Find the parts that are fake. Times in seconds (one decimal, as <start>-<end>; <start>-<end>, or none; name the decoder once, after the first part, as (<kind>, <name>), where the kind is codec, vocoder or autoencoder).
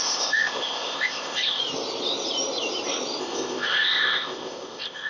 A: 0.0-1.6 (codec, ZipCodec); 3.2-5.1